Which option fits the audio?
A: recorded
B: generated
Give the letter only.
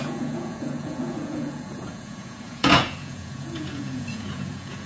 B